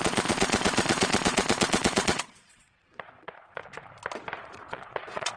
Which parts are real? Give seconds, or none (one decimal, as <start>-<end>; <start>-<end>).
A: 3.6-4.4